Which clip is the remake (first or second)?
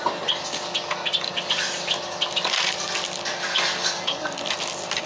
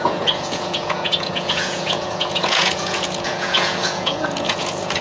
second